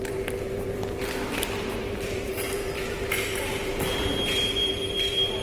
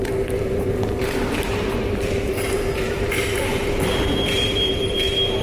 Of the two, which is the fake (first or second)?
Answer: second